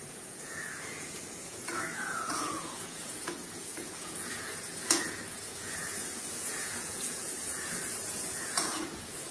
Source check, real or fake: fake